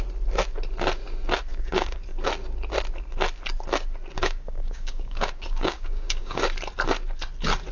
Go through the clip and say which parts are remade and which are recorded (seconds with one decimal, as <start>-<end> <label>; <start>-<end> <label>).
0.0-1.5 recorded; 1.5-2.0 remade; 2.0-4.2 recorded; 4.2-6.4 remade; 6.4-7.7 recorded